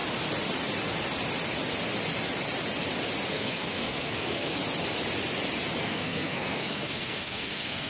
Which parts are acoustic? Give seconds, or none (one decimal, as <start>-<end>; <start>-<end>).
0.0-3.3; 4.6-5.8